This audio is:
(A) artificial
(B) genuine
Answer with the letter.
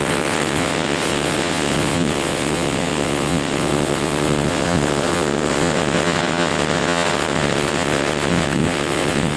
A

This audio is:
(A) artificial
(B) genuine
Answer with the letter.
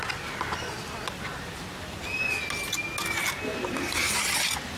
B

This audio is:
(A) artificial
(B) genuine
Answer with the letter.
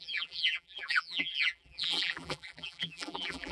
A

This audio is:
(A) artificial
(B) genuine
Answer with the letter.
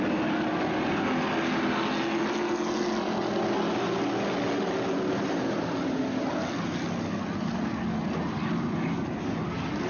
B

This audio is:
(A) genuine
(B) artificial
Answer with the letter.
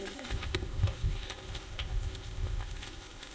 B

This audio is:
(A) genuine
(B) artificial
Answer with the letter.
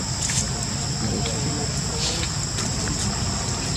A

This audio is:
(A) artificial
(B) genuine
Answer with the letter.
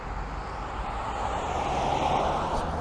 B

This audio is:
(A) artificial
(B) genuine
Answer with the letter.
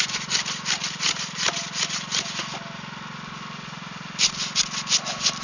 B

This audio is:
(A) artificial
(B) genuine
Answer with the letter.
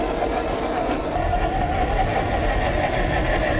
B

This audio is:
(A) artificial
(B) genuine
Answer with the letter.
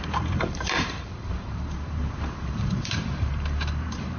A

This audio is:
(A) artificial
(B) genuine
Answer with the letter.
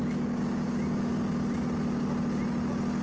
B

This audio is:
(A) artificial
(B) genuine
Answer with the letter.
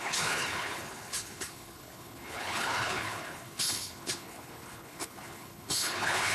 A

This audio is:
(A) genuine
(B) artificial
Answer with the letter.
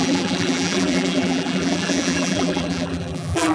B